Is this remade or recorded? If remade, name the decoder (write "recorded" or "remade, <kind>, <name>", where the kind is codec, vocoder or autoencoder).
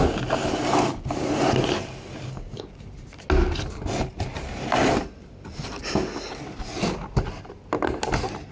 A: recorded